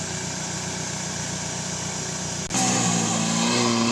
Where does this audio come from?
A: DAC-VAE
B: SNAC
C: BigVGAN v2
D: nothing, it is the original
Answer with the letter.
D